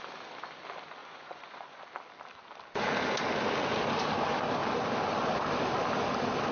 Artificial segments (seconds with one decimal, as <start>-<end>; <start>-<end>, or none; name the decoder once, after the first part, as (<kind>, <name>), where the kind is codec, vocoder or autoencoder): 1.0-1.8 (vocoder, Vocos)